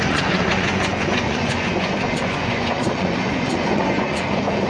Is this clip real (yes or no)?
no